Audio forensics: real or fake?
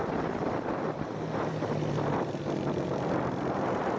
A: fake